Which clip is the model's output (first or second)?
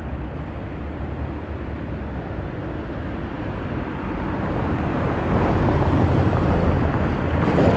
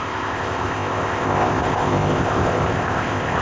second